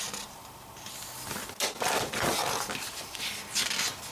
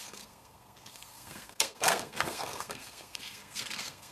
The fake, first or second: second